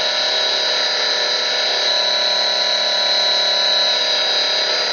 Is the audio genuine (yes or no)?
yes